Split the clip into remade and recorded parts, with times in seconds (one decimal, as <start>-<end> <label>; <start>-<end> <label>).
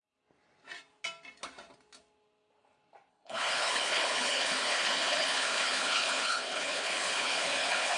0.0-3.1 recorded; 3.1-8.0 remade